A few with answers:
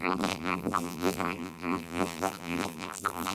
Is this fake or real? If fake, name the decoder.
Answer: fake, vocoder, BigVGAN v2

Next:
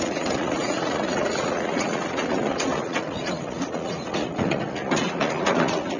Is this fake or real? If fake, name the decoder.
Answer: fake, vocoder, Vocos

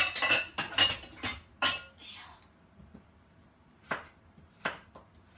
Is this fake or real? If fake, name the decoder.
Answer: real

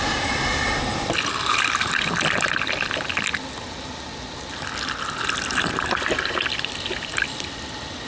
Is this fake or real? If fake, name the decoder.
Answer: real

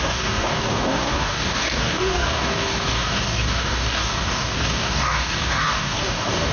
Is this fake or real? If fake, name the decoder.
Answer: fake, codec, DAC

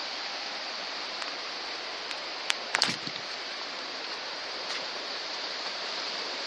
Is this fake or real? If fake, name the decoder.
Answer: fake, vocoder, BigVGAN v2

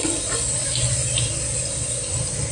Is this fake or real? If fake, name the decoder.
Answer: real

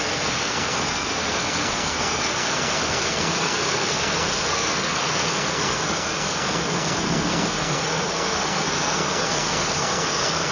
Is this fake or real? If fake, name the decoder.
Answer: fake, codec, SNAC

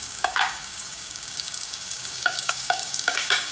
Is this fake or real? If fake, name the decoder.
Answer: fake, codec, DAC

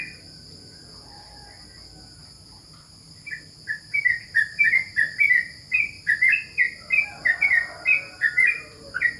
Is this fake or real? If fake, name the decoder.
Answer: real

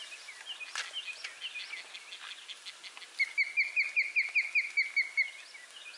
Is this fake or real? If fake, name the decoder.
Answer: real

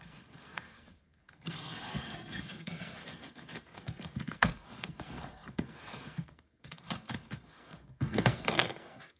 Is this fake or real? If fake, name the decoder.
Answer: fake, codec, SNAC